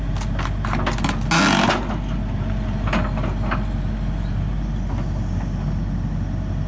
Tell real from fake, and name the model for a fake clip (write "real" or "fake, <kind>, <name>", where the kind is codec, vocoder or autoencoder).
real